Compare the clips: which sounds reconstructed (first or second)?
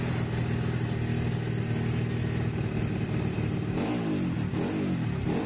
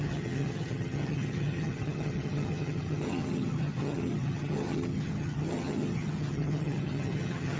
second